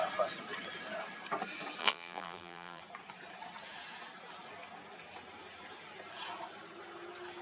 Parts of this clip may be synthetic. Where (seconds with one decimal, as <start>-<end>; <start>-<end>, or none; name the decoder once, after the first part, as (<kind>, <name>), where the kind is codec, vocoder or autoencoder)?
1.8-2.8 (vocoder, BigVGAN v2)